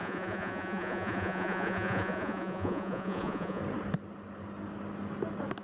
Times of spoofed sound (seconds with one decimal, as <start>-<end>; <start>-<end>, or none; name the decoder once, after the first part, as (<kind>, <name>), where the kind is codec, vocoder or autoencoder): 0.0-3.6 (vocoder, Vocos)